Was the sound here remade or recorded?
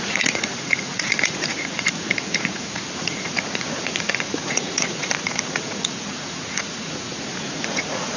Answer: remade